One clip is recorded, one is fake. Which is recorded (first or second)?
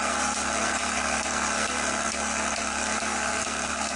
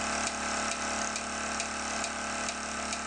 second